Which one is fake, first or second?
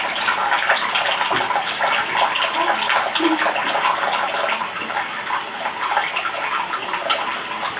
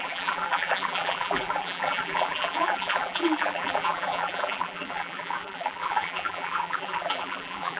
second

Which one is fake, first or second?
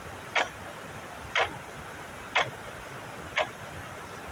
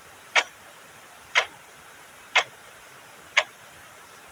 second